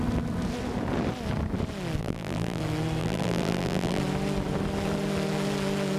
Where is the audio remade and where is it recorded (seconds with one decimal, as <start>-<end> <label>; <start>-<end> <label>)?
0.0-2.0 recorded; 2.0-2.6 remade; 2.6-3.0 recorded; 3.0-4.0 remade; 4.0-6.0 recorded